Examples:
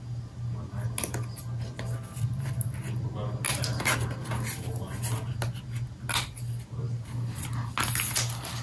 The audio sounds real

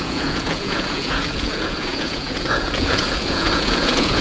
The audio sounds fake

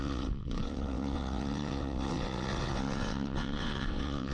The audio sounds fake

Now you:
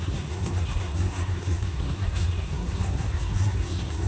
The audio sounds fake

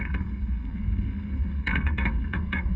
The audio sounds fake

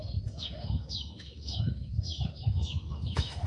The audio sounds fake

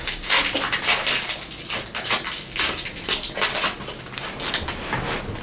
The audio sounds real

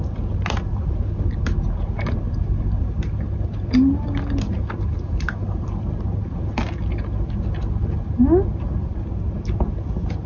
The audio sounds real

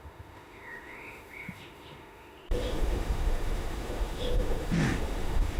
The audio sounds fake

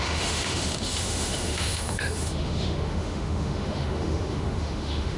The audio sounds fake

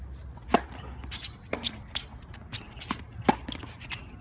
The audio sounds real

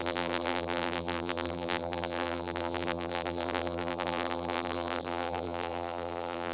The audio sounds fake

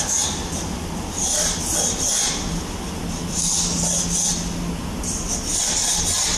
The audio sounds real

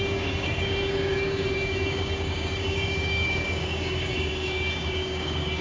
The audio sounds fake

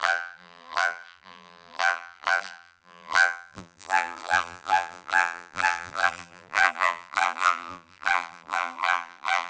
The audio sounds fake